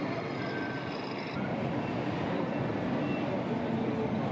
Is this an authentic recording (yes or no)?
yes